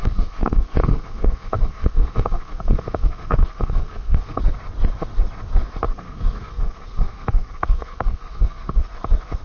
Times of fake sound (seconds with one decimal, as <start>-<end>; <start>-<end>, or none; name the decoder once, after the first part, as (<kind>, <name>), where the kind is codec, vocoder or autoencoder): 0.0-4.4 (codec, SNAC); 5.9-8.8